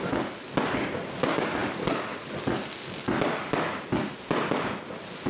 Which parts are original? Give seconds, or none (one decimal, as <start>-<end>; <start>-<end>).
0.0-5.3